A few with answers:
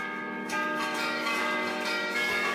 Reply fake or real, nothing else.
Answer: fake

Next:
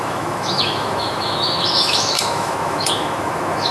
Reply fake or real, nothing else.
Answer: fake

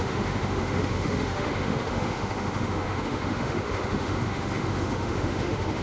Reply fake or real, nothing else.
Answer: fake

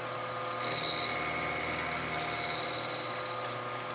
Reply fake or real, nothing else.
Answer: real